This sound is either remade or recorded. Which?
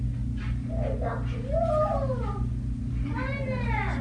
recorded